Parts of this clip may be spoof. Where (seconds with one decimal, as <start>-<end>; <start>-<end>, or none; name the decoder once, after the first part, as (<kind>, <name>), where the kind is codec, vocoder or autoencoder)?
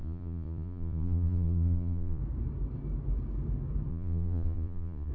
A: 0.0-2.2 (vocoder, Vocos); 3.9-5.1